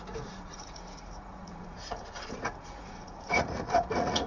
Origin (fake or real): fake